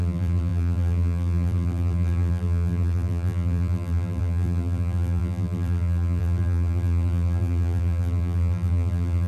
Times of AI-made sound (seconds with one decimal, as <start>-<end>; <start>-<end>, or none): 0.0-9.3